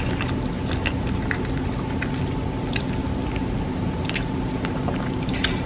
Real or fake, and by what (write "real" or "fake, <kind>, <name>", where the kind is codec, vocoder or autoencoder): real